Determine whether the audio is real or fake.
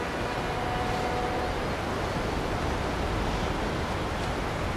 real